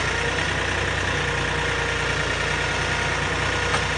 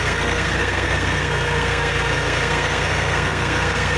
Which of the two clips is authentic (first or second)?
first